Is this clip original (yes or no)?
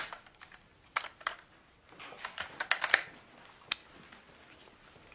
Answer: yes